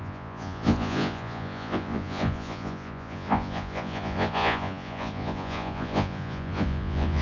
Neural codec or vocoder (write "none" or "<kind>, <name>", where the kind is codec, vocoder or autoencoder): vocoder, Vocos